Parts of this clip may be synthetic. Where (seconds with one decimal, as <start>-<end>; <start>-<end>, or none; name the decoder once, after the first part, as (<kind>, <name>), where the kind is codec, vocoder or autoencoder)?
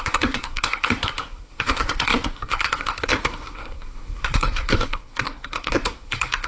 0.0-6.5 (codec, SNAC)